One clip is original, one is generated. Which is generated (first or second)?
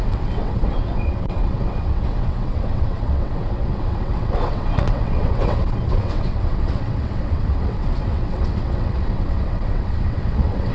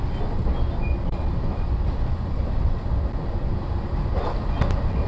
first